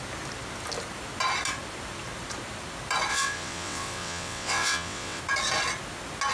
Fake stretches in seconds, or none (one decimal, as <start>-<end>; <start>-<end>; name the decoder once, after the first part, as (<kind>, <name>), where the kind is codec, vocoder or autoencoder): 3.1-5.2 (vocoder, WaveNeXt)